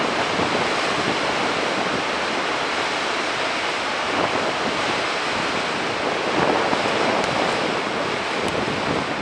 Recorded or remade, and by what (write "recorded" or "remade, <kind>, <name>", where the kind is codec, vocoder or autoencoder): recorded